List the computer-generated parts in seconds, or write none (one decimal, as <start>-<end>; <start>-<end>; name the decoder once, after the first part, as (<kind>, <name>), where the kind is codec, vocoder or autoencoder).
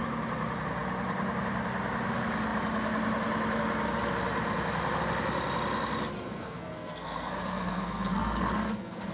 6.2-9.1 (codec, SNAC)